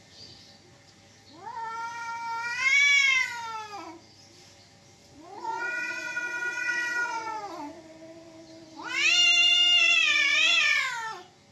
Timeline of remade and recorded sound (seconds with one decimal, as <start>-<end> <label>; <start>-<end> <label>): 0.0-5.0 recorded; 5.0-7.4 remade; 7.4-11.5 recorded